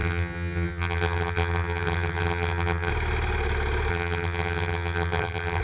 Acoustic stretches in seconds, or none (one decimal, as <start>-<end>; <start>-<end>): 2.9-3.9